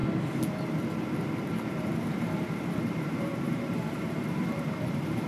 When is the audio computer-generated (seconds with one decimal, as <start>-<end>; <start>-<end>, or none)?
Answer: 1.6-5.3